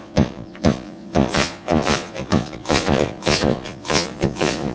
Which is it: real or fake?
fake